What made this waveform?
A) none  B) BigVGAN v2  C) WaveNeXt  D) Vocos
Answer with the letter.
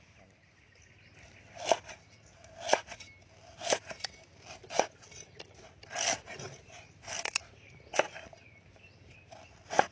A